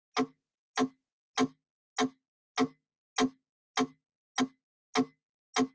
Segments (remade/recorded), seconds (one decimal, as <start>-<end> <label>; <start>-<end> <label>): 0.0-5.7 recorded

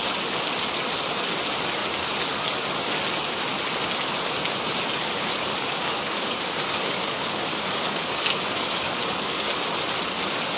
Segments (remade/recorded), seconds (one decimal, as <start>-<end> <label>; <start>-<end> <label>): 0.0-5.1 recorded; 5.1-8.9 remade; 8.9-10.6 recorded